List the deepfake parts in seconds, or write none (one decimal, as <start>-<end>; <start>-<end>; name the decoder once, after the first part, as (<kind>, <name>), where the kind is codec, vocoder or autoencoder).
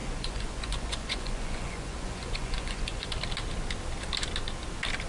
0.0-3.1 (vocoder, Vocos)